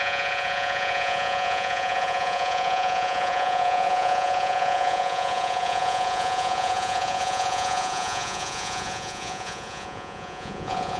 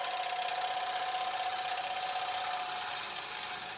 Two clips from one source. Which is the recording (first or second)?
second